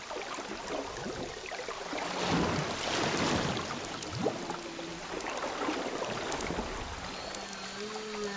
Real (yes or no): yes